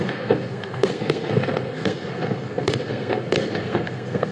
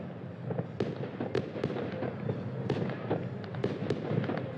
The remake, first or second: first